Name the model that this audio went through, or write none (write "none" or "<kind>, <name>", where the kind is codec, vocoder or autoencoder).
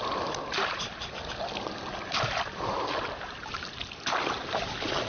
none